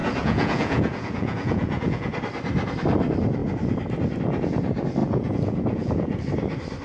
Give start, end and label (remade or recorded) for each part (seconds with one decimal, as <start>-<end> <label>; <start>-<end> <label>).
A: 0.0-2.1 remade; 2.1-5.0 recorded; 5.0-6.2 remade; 6.2-6.8 recorded